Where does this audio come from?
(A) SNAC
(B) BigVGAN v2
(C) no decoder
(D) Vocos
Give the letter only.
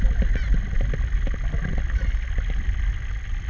C